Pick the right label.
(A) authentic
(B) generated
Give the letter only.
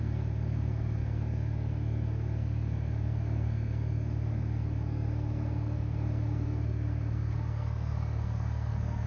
B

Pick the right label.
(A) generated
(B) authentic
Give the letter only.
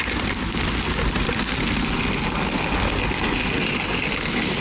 B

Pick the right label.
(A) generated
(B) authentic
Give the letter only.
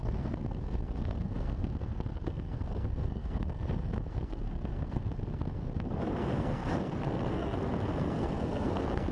A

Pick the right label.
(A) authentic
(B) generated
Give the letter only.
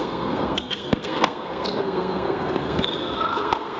B